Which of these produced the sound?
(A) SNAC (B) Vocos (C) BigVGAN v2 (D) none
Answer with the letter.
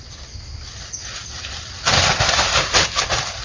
D